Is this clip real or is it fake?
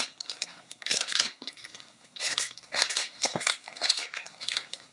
fake